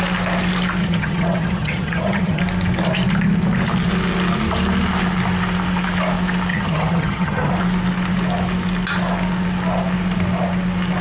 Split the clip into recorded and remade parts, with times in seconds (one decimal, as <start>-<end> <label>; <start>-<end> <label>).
0.0-0.8 recorded; 0.8-2.4 remade; 2.4-6.5 recorded; 6.5-7.5 remade; 7.5-11.0 recorded

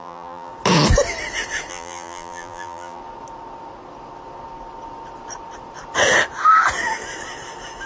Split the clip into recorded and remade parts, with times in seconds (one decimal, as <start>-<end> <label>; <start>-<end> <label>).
0.0-0.5 remade; 0.5-1.7 recorded; 1.7-3.0 remade; 3.0-7.9 recorded

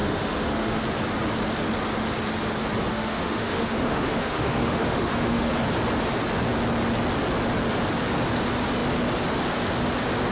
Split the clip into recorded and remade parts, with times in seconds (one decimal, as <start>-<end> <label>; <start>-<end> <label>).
0.0-0.8 remade; 0.8-2.9 recorded; 2.9-5.5 remade; 5.5-10.3 recorded

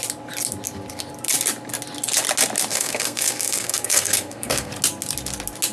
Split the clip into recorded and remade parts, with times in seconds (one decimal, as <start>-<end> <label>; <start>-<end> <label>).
0.0-2.7 recorded; 2.7-4.7 remade; 4.7-5.7 recorded